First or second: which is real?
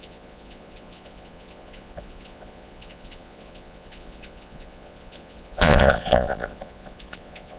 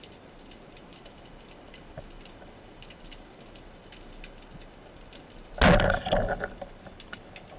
second